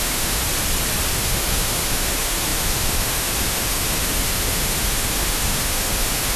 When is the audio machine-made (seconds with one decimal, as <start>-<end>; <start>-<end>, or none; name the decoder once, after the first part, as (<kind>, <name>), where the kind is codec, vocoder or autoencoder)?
0.0-0.4 (autoencoder, DAC-VAE); 1.1-6.4